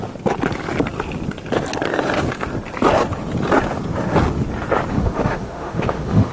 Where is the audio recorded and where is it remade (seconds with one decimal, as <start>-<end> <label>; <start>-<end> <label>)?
0.0-4.9 recorded; 4.9-6.3 remade